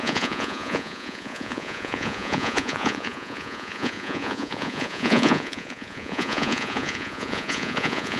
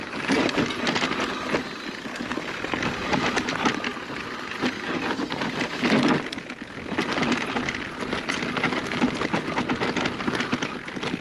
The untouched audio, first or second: second